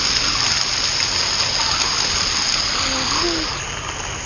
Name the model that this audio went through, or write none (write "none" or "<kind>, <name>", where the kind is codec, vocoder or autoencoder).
none